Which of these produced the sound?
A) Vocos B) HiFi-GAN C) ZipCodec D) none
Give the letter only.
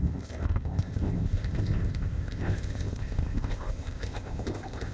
C